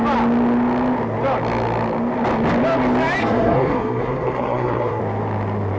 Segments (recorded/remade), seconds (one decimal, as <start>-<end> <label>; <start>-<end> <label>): 0.0-3.2 recorded; 3.2-5.0 remade; 5.0-5.8 recorded